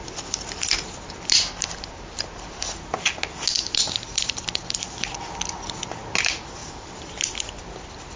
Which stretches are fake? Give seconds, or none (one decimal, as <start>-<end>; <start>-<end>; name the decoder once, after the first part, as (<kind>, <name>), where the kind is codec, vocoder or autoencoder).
3.5-5.1 (vocoder, BigVGAN v2); 6.6-7.6